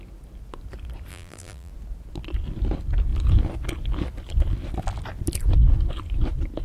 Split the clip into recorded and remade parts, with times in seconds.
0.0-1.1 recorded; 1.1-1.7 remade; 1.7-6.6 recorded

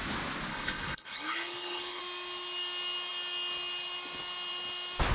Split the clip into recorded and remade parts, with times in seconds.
0.0-0.5 recorded; 0.5-2.0 remade; 2.0-5.1 recorded

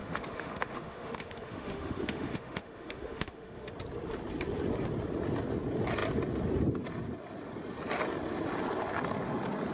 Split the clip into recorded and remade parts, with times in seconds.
0.0-3.7 remade; 3.7-9.7 recorded